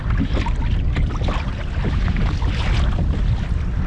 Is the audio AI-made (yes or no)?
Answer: no